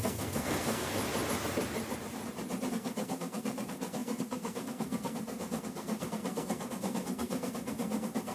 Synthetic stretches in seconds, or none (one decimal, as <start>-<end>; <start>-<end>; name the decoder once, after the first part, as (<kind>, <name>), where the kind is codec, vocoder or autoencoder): 0.0-1.0 (codec, SNAC); 2.7-8.3